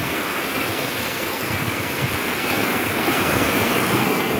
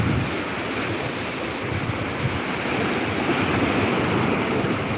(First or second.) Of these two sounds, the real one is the second